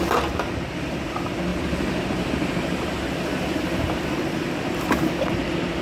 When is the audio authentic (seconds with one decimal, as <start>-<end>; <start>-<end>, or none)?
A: 0.0-1.5; 5.0-5.8